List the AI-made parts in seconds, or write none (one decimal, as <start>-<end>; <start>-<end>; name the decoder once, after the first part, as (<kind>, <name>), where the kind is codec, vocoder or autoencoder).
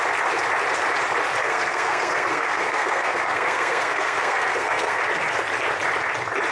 1.4-5.0 (codec, SNAC)